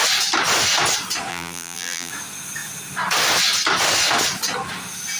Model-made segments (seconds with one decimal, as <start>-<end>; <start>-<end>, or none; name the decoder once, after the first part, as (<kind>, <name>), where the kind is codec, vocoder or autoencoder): 1.3-2.1 (vocoder, BigVGAN v2)